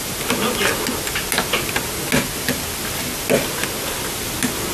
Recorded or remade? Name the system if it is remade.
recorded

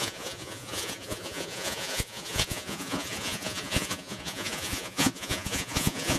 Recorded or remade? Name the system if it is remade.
remade, vocoder, Vocos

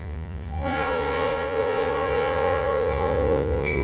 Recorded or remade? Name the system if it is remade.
remade, vocoder, Vocos